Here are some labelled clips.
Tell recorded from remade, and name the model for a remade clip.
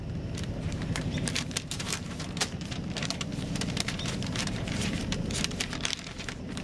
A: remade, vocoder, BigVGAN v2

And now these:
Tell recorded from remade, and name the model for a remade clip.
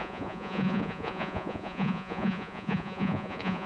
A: remade, vocoder, Vocos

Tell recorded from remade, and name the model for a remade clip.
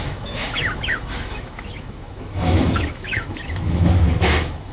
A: remade, autoencoder, DAC-VAE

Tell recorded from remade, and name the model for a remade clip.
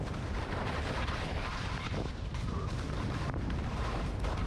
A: remade, vocoder, BigVGAN v2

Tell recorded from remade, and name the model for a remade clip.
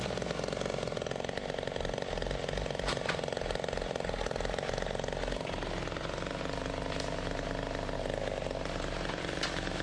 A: recorded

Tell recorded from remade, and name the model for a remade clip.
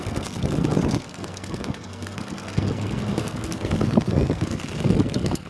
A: remade, codec, SNAC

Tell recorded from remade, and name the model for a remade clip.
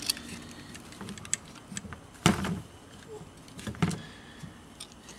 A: recorded